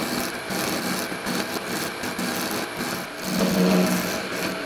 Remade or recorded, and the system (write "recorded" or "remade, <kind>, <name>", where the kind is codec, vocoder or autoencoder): recorded